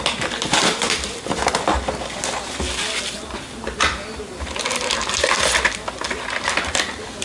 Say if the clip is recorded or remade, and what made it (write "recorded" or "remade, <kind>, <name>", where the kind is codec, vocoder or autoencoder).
recorded